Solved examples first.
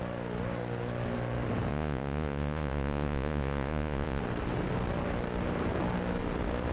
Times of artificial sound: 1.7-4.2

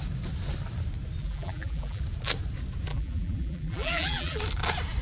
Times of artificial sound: 1.2-2.0; 2.9-4.4

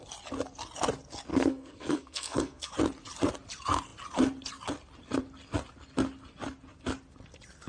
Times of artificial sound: 1.3-2.7

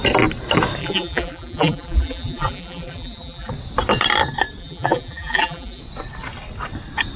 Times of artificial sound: 0.8-3.5; 4.6-5.8

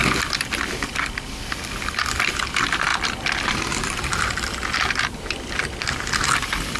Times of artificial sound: 0.0-0.5; 2.9-4.5